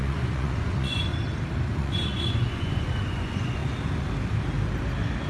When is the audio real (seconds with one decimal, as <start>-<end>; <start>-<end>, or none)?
1.1-1.7; 3.6-5.3